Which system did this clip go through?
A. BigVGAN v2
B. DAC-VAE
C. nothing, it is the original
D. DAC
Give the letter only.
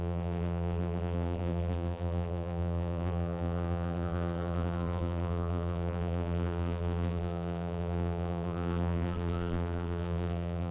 A